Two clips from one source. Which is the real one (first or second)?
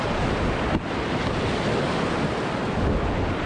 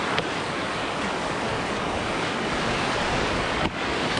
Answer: first